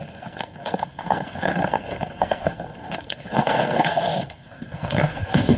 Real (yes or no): no